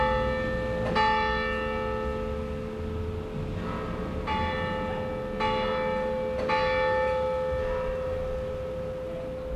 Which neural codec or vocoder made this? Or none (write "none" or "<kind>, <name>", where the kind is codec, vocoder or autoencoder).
none